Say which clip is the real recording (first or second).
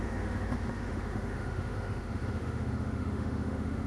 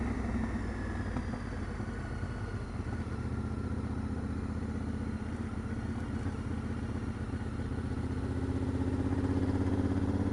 second